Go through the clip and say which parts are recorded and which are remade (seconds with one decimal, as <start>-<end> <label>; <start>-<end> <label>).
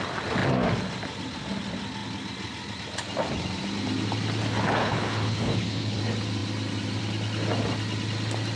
0.0-4.8 recorded; 4.8-6.0 remade; 6.0-8.6 recorded